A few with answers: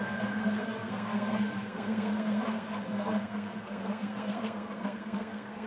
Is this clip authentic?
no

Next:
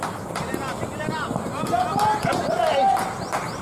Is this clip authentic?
yes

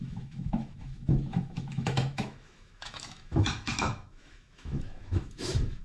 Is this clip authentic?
no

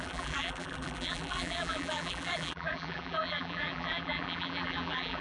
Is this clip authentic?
no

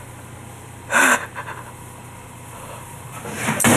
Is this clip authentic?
yes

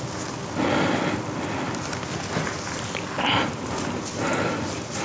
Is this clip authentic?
yes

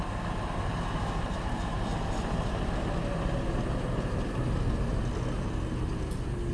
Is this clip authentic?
yes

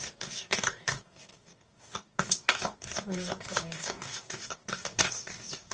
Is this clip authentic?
no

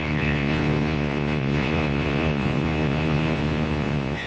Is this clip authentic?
no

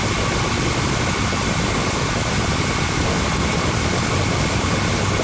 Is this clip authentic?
yes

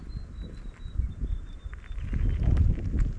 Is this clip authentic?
yes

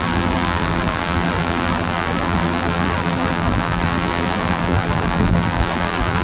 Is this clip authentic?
no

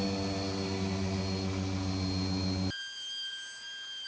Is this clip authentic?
yes